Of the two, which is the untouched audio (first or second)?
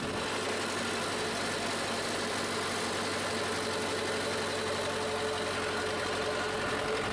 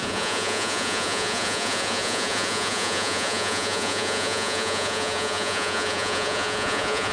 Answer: first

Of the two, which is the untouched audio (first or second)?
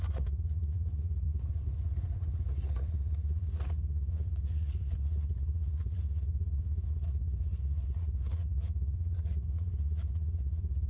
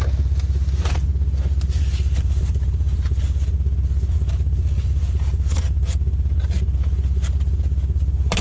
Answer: second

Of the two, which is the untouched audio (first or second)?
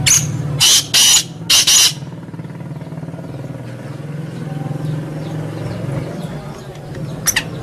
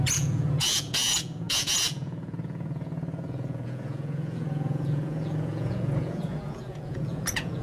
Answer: first